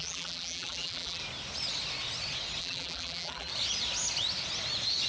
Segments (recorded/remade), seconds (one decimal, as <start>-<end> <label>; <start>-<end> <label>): 0.0-1.2 remade; 1.2-2.6 recorded; 2.6-3.5 remade; 3.5-5.1 recorded